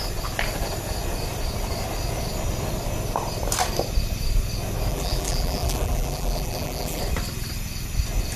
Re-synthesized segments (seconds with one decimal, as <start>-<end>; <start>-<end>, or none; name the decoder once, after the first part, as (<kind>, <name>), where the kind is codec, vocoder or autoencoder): 4.9-7.0 (vocoder, BigVGAN v2)